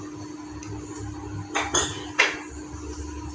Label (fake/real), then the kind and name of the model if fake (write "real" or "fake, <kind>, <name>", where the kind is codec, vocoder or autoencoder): real